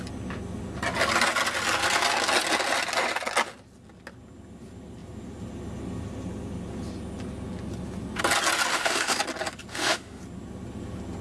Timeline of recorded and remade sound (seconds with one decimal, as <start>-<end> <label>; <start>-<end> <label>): 0.0-8.7 recorded; 8.7-9.2 remade; 9.2-9.7 recorded; 9.7-10.2 remade; 10.2-11.2 recorded